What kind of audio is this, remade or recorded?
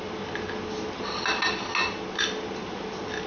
recorded